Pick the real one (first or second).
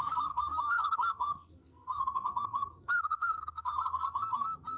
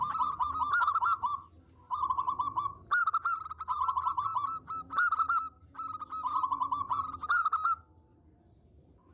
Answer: second